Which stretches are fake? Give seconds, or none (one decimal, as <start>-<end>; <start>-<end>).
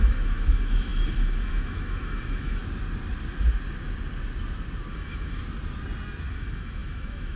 0.0-2.6; 4.9-5.4; 6.3-7.4